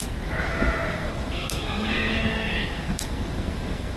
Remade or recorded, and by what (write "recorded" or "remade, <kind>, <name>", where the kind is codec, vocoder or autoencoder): remade, codec, SNAC